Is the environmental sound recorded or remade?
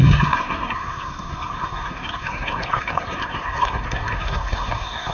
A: remade